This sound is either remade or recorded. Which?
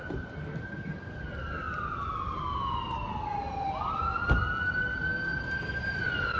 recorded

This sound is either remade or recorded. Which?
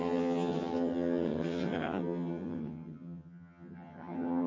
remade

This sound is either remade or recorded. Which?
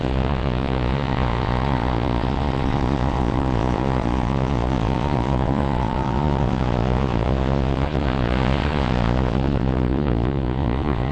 remade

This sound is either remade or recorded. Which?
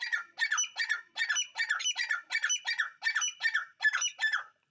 recorded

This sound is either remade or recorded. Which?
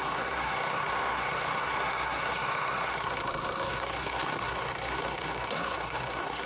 remade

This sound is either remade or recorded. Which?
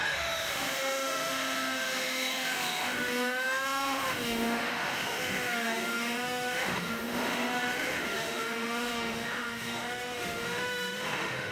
remade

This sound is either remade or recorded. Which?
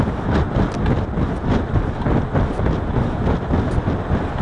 recorded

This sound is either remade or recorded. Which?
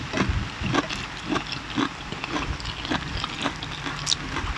recorded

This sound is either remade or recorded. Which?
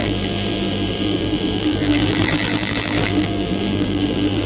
remade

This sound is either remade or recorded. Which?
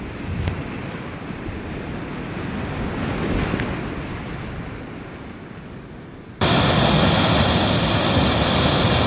recorded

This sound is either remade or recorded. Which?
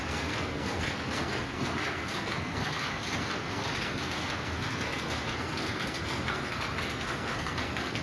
remade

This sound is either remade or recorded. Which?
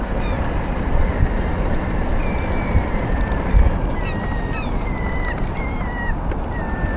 remade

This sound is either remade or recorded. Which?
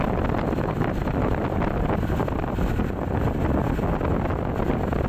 recorded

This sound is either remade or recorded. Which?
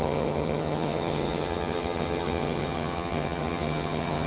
remade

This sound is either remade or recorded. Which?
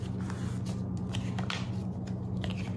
recorded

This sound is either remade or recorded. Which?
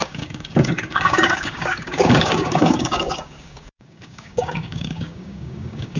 remade